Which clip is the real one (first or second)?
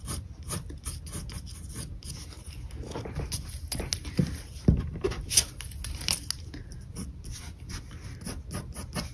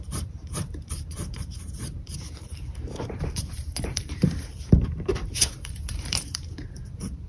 first